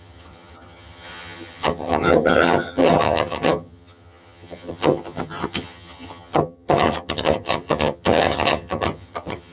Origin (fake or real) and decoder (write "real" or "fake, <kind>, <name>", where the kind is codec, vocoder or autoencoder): fake, vocoder, HiFi-GAN